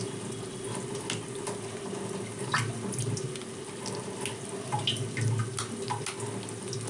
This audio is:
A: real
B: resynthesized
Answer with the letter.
A